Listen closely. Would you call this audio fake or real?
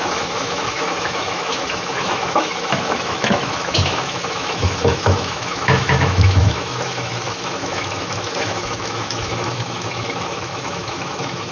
fake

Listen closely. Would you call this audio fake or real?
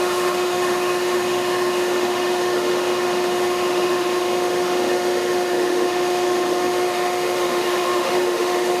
fake